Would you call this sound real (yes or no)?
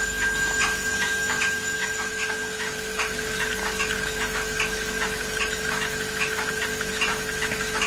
no